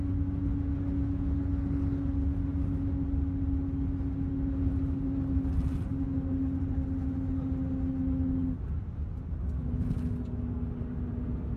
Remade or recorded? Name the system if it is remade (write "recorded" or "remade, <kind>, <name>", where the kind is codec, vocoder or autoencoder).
recorded